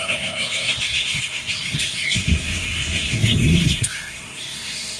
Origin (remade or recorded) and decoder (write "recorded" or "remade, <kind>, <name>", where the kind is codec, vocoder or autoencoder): remade, codec, SNAC